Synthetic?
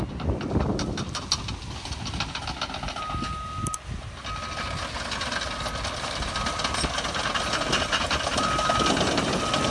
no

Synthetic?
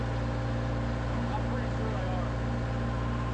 no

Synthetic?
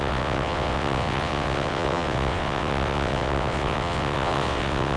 yes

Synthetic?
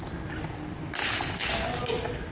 no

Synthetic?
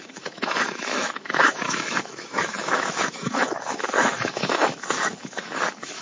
yes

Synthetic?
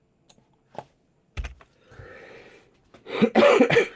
no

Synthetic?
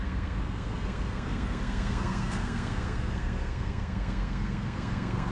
yes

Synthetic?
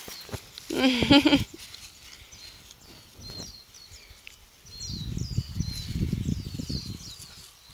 no